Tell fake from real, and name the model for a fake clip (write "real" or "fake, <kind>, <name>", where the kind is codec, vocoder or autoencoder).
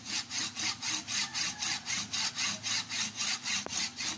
real